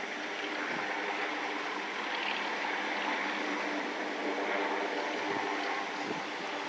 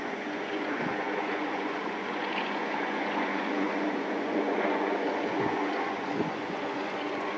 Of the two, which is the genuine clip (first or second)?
first